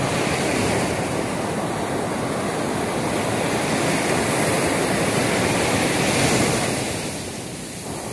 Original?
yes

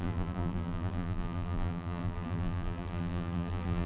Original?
no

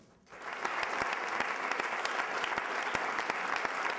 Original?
yes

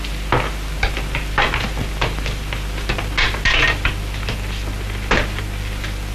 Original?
yes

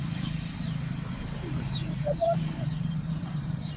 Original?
no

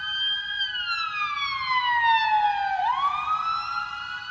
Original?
yes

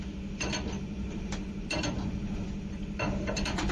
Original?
no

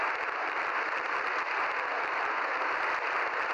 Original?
yes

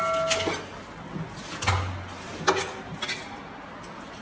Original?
yes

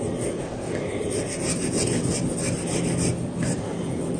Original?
yes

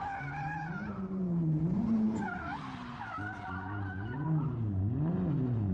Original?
no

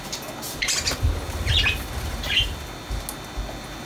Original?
yes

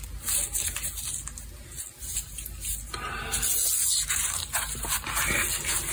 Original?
yes